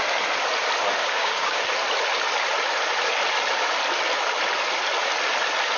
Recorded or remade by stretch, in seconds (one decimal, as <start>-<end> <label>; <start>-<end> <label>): 0.0-1.0 recorded; 1.0-1.6 remade; 1.6-5.8 recorded